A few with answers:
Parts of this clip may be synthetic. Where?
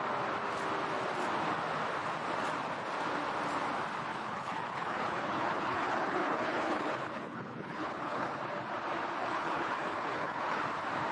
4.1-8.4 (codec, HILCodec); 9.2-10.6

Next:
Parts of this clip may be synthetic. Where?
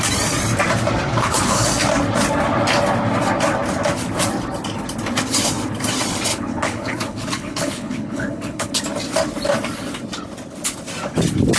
1.1-1.7 (codec, HILCodec); 6.3-8.8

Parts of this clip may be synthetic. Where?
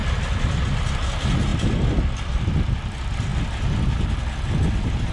none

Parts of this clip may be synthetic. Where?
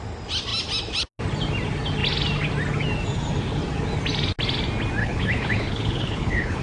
5.0-6.6 (codec, HILCodec)